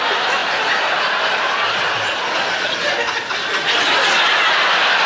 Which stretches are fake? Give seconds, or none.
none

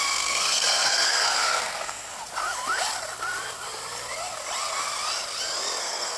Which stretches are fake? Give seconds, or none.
0.0-2.1; 5.8-6.2